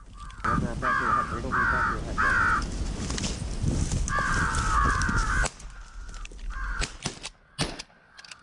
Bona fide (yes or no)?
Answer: yes